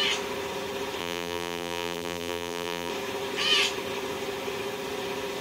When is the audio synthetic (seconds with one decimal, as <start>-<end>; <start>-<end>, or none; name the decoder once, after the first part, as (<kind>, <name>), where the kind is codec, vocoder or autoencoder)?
1.0-2.9 (vocoder, BigVGAN v2)